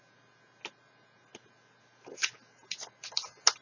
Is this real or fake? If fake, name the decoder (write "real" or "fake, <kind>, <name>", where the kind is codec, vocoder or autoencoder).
real